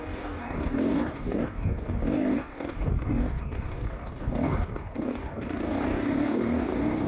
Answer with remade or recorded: remade